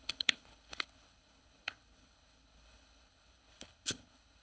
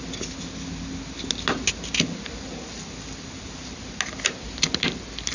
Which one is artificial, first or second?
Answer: first